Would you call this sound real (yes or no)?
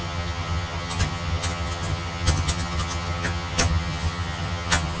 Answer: no